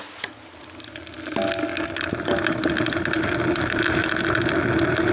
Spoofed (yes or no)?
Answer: no